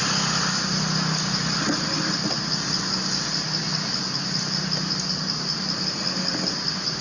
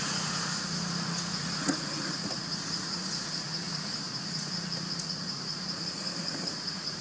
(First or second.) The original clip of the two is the first